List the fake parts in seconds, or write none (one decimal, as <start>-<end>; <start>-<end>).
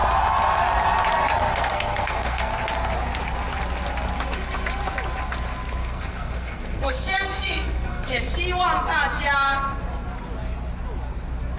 1.5-2.5; 5.8-8.2